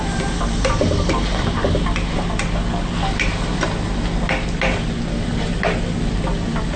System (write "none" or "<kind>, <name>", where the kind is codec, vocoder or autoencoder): none